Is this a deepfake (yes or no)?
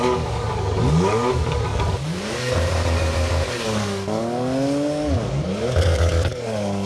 yes